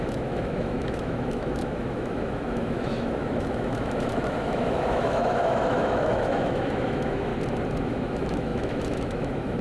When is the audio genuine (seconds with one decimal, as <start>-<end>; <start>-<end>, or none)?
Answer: 7.3-7.8